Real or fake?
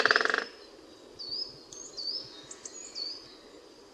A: real